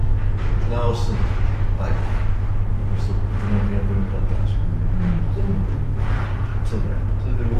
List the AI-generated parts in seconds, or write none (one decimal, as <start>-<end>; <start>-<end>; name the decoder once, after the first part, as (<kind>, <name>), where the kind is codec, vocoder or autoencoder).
none